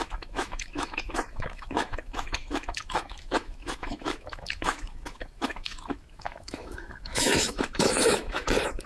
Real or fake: fake